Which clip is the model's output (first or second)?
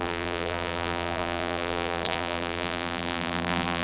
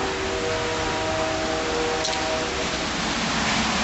first